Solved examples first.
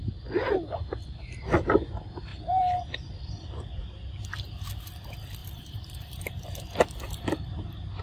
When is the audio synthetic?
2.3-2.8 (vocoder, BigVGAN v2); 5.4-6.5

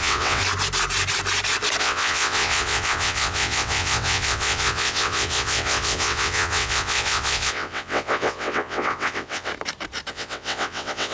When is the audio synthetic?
0.0-0.4 (vocoder, WaveNeXt); 1.8-9.5; 10.1-11.1

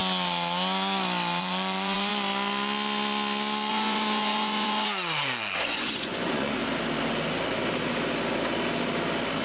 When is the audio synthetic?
1.4-2.1 (vocoder, Vocos); 3.7-6.6

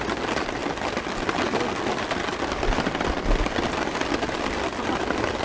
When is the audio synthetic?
none

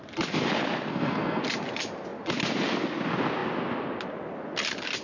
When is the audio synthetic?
0.9-1.4 (codec, SNAC)